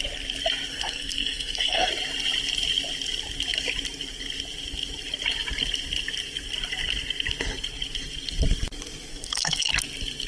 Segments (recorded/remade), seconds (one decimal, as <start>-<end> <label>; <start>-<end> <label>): 0.0-0.7 recorded; 0.7-1.9 remade; 1.9-9.1 recorded; 9.1-9.7 remade; 9.7-10.3 recorded

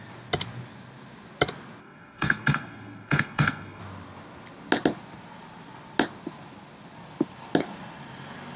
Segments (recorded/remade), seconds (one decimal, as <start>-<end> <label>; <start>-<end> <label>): 0.0-1.8 recorded; 1.8-3.8 remade; 3.8-8.6 recorded

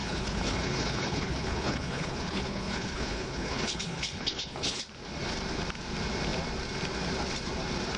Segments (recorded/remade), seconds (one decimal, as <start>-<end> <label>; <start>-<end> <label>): 0.0-4.8 remade; 4.8-8.0 recorded

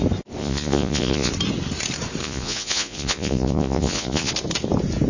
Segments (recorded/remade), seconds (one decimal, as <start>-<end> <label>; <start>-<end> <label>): 0.0-0.4 recorded; 0.4-1.3 remade; 1.3-2.2 recorded; 2.2-4.3 remade; 4.3-5.1 recorded

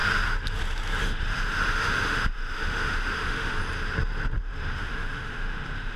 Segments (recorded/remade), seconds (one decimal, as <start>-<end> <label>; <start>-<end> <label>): 0.0-1.0 recorded; 1.0-3.6 remade; 3.6-4.4 recorded; 4.4-6.0 remade

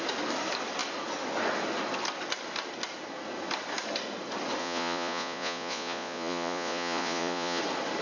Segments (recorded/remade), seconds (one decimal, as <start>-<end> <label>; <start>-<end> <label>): 0.0-4.6 recorded; 4.6-7.6 remade; 7.6-8.0 recorded